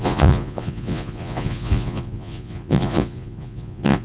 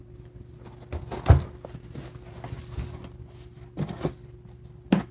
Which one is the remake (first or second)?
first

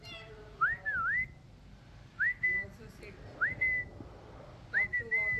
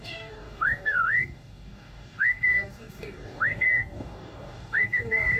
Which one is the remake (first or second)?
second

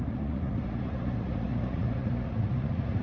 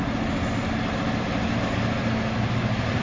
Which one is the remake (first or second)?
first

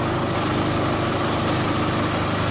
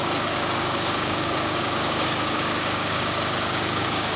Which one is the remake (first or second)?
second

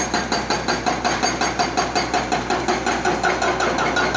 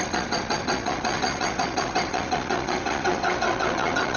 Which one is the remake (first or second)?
second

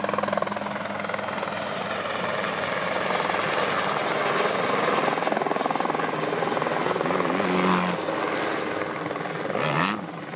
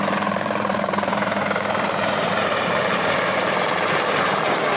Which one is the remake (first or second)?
second